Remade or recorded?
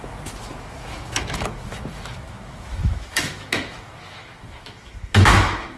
remade